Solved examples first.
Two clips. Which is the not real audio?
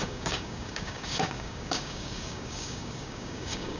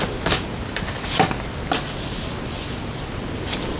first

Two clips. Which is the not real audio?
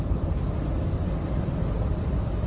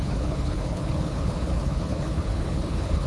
second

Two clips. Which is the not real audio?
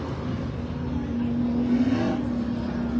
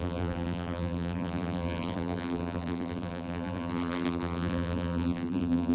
second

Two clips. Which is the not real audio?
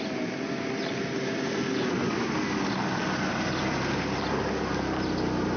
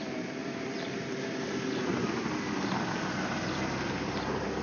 second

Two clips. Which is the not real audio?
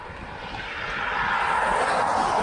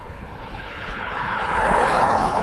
second